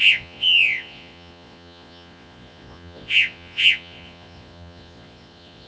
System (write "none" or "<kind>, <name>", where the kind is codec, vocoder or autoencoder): vocoder, Vocos